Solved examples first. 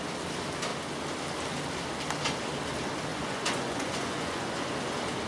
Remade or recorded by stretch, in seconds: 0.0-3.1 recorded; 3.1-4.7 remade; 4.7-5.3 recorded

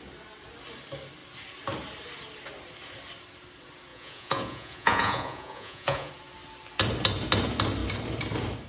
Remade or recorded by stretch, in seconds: 0.0-3.9 recorded; 3.9-6.1 remade; 6.1-8.7 recorded

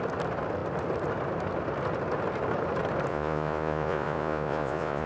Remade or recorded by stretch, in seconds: 0.0-3.1 recorded; 3.1-5.1 remade

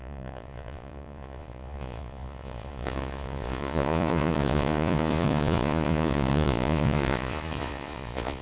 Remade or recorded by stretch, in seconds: 0.0-8.4 remade

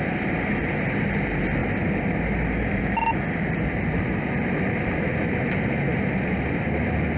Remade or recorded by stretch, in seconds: 0.0-7.2 recorded

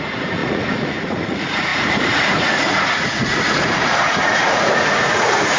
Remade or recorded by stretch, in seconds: 0.0-5.6 remade